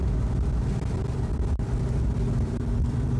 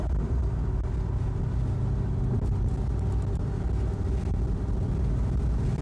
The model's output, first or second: first